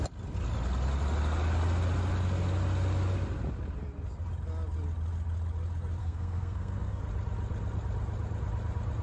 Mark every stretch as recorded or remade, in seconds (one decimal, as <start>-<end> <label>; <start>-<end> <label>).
0.0-6.0 recorded; 6.0-7.0 remade; 7.0-9.0 recorded